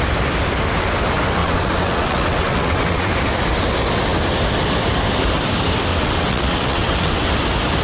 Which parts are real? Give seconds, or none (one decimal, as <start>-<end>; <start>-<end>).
0.0-1.4; 3.1-5.9; 7.3-7.8